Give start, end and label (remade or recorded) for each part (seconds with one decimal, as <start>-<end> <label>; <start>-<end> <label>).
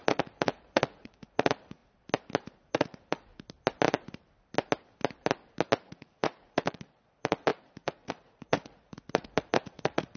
0.0-1.8 remade; 1.8-2.7 recorded; 2.7-3.3 remade; 3.3-5.8 recorded; 5.8-10.2 remade